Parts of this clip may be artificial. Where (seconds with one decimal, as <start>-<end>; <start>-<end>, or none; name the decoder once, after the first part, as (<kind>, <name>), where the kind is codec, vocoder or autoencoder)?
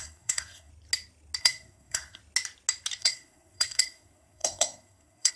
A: 0.0-0.7 (codec, SNAC); 1.4-2.2; 3.0-5.3